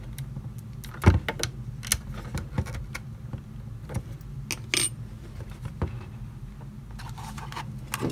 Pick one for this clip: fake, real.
real